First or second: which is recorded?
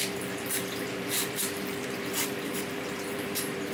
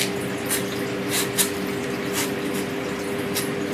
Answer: second